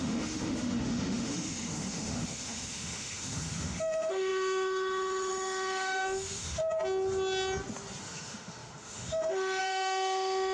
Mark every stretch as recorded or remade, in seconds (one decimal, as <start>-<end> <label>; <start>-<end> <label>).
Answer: 0.0-6.6 remade; 6.6-8.0 recorded; 8.0-10.5 remade